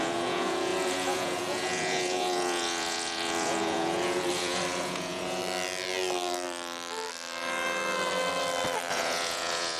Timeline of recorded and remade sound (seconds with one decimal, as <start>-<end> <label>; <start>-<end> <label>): 0.0-5.4 remade; 5.4-8.9 recorded; 8.9-9.8 remade